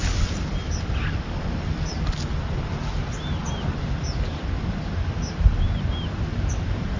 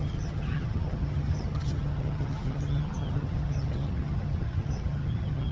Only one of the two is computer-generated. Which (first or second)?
second